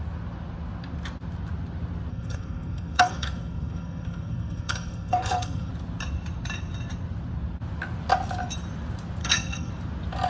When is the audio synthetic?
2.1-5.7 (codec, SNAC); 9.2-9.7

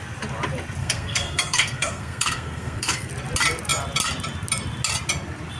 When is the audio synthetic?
0.8-3.1 (codec, SNAC)

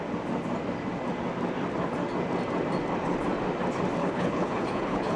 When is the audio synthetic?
4.0-5.2 (codec, HILCodec)

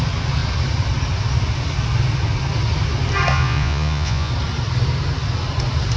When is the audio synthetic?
3.3-4.3 (vocoder, Vocos)

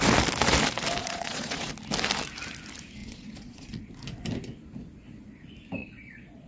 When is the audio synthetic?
1.0-1.7 (vocoder, Vocos); 3.0-3.9; 5.8-6.5